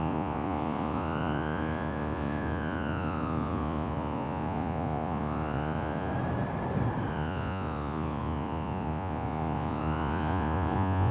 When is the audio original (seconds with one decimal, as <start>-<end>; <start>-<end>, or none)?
6.1-7.1